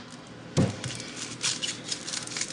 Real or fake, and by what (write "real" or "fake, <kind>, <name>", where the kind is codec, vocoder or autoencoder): real